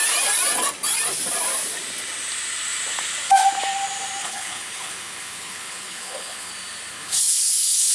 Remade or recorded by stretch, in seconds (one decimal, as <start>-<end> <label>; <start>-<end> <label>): 0.0-4.2 recorded; 4.2-6.5 remade; 6.5-6.9 recorded; 6.9-7.9 remade